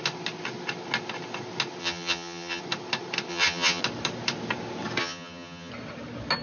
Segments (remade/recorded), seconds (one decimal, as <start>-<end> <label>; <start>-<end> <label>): 0.0-1.8 recorded; 1.8-2.6 remade; 2.6-3.3 recorded; 3.3-3.8 remade; 3.8-5.0 recorded; 5.0-5.7 remade; 5.7-6.4 recorded